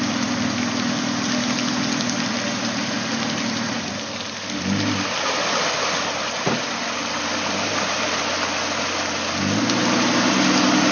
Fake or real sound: real